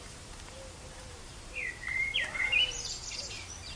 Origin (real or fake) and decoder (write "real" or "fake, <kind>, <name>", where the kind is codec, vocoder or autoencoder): fake, vocoder, BigVGAN v2